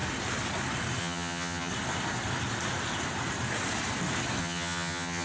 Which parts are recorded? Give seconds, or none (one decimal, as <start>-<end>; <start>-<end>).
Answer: 0.0-1.0; 1.7-4.4